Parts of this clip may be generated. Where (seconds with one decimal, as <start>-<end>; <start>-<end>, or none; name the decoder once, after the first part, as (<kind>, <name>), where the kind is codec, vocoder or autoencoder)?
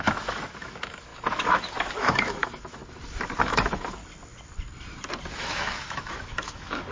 0.0-2.8 (autoencoder, DAC-VAE); 3.4-4.0; 5.4-6.9